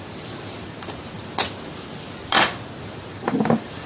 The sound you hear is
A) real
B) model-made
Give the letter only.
A